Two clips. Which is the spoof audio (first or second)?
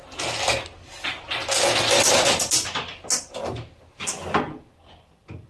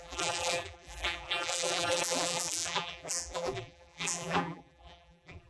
second